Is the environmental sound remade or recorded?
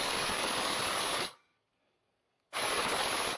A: remade